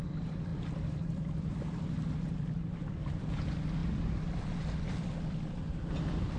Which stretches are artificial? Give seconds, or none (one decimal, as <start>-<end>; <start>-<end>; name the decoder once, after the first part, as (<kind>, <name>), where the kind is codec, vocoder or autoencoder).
0.0-6.4 (vocoder, BigVGAN v2)